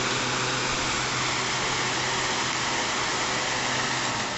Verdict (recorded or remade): recorded